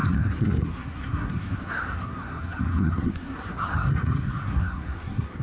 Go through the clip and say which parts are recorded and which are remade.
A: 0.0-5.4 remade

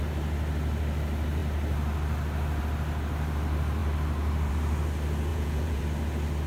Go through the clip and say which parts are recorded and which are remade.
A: 0.0-5.3 recorded; 5.3-5.8 remade; 5.8-6.5 recorded

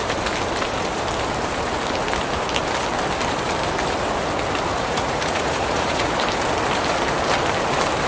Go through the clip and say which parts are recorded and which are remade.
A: 0.0-4.7 recorded; 4.7-6.1 remade; 6.1-8.1 recorded

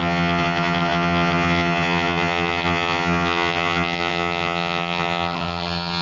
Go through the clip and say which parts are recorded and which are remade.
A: 0.0-6.0 remade

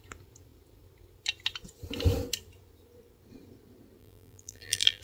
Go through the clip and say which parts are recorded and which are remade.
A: 0.0-4.0 recorded; 4.0-5.0 remade